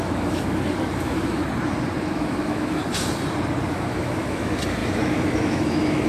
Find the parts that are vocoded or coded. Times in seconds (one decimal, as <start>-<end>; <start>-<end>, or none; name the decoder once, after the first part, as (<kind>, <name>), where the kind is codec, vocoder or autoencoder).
0.0-1.4 (autoencoder, DAC-VAE); 2.0-2.8; 3.7-6.1